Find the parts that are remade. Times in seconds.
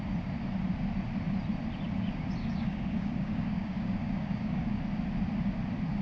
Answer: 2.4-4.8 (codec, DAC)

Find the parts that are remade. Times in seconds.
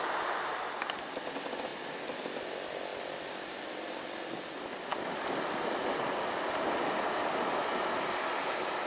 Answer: none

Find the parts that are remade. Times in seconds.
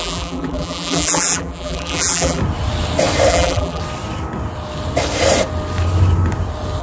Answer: 0.0-2.4 (vocoder, BigVGAN v2); 3.3-3.8